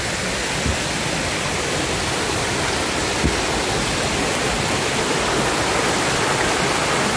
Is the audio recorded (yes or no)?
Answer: yes